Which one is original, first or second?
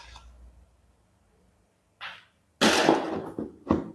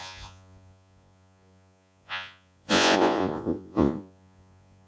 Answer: first